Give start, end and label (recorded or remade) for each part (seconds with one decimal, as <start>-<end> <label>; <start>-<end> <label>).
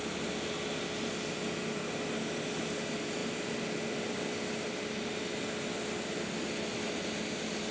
0.0-7.7 recorded